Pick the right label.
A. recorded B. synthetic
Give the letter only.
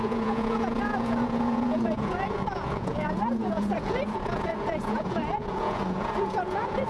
B